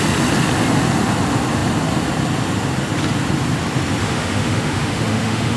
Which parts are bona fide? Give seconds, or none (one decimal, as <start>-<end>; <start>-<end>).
0.0-4.0